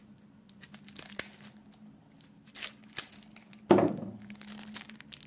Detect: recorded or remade recorded